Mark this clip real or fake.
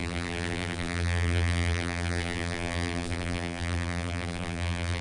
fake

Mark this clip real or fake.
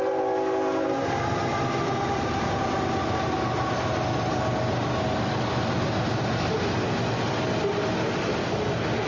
real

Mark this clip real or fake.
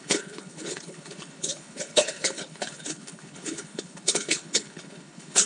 fake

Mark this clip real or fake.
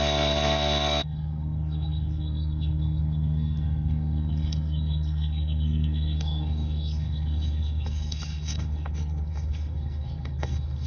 fake